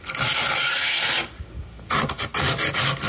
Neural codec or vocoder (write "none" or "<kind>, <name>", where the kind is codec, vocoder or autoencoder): none